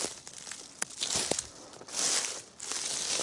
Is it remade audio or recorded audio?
recorded